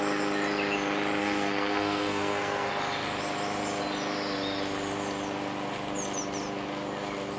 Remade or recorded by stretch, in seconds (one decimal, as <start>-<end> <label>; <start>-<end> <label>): 0.0-1.2 recorded; 1.2-2.7 remade; 2.7-7.4 recorded

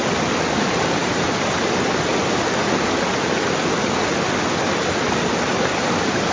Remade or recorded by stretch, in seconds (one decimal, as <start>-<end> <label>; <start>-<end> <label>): 0.0-6.3 recorded

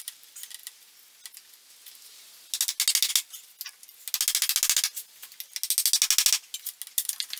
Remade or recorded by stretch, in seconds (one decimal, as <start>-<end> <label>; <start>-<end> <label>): 0.0-7.4 recorded

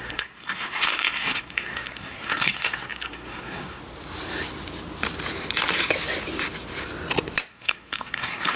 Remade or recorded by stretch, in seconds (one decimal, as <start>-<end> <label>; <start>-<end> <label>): 0.0-3.8 remade; 3.8-7.5 recorded; 7.5-8.6 remade

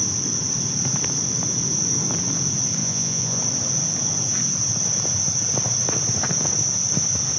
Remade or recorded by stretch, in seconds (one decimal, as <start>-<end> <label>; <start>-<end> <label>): 0.0-2.8 recorded; 2.8-3.4 remade; 3.4-7.4 recorded

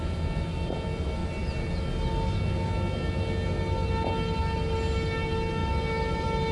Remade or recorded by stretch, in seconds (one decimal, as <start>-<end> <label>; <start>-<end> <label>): 0.0-6.5 recorded

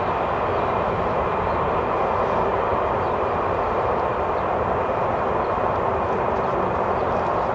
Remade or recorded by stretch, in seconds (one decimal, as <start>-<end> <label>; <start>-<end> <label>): 0.0-7.5 recorded

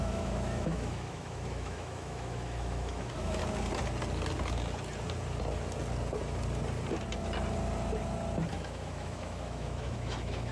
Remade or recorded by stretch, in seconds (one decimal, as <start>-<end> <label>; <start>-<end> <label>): 0.0-3.4 remade; 3.4-8.5 recorded; 8.5-10.5 remade